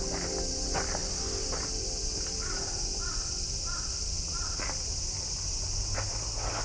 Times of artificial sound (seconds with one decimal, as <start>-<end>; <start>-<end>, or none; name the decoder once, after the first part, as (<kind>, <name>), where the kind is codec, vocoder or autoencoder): none